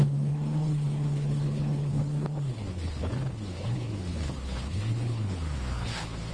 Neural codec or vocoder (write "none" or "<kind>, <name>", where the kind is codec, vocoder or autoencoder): codec, HILCodec